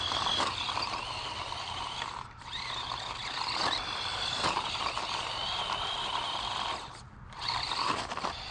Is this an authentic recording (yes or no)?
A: no